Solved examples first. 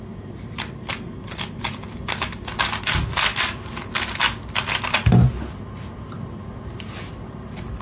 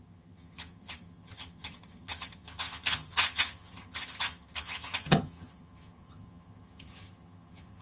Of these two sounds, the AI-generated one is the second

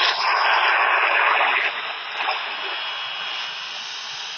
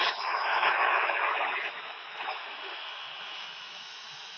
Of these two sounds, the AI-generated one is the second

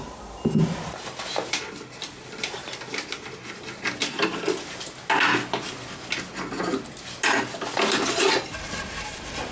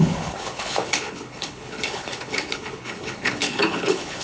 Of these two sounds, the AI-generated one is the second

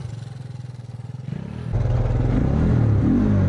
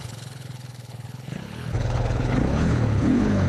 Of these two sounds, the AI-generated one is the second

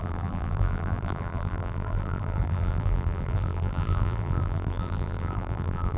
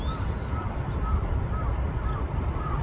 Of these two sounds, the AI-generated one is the first